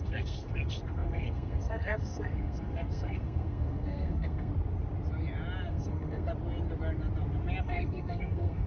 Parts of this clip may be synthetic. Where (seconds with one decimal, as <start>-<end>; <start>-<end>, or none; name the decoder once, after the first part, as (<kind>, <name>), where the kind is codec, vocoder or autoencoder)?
0.0-4.5 (codec, SNAC); 5.7-6.3; 7.6-8.7